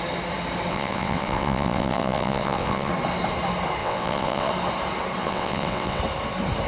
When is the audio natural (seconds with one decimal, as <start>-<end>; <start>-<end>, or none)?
0.0-0.7; 2.9-3.8; 4.5-5.2; 6.0-6.7